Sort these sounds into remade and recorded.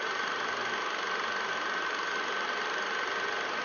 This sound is recorded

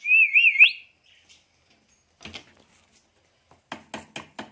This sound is recorded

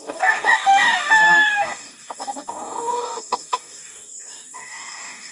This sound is remade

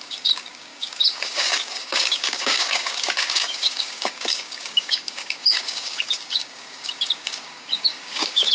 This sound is remade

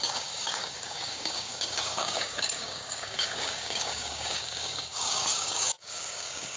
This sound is remade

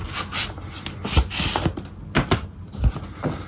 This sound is recorded